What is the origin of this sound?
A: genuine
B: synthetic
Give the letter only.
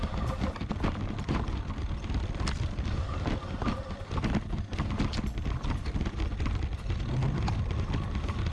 A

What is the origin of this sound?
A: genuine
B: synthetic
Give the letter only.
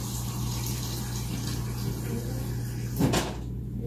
A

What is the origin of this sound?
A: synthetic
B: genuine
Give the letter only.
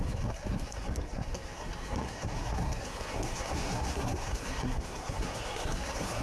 A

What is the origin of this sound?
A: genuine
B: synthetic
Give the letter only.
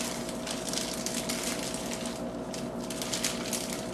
A